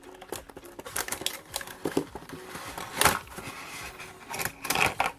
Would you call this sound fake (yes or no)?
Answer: no